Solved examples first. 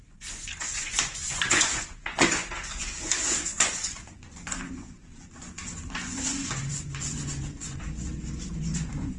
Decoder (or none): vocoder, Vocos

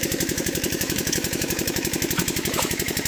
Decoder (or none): autoencoder, DAC-VAE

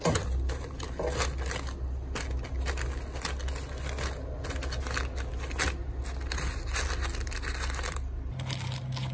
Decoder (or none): none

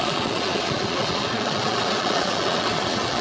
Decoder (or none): vocoder, Vocos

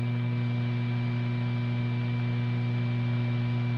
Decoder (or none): none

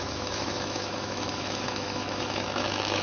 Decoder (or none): autoencoder, DAC-VAE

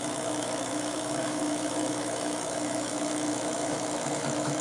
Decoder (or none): autoencoder, DAC-VAE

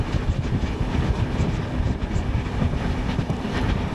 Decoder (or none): none